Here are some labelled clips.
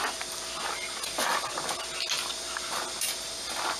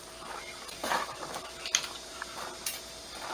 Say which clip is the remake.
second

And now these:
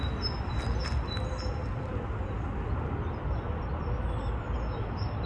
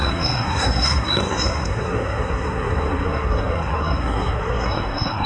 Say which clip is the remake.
second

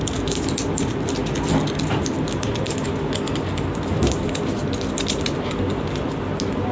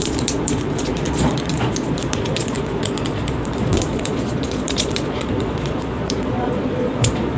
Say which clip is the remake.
second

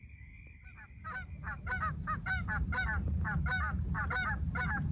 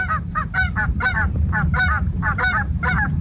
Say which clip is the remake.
second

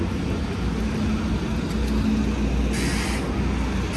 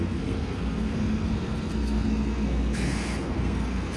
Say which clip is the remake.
second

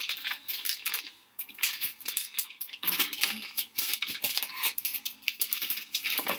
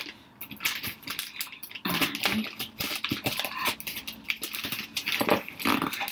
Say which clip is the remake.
first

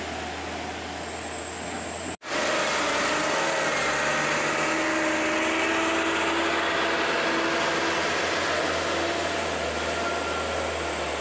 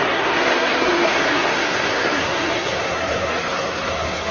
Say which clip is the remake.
second